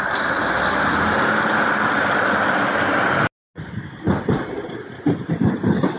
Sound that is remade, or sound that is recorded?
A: recorded